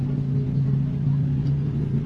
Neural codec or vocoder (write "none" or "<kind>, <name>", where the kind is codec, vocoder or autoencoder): none